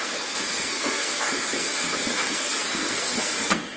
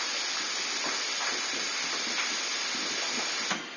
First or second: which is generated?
first